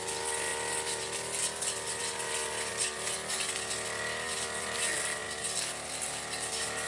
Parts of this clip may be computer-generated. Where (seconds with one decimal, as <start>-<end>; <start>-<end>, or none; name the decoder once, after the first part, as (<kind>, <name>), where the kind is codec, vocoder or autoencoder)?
none